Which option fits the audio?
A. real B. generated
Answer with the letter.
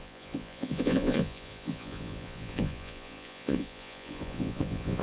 B